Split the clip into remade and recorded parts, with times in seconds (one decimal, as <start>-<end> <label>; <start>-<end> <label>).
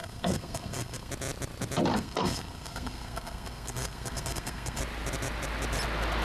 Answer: 0.0-1.1 remade; 1.1-1.9 recorded; 1.9-4.8 remade; 4.8-6.2 recorded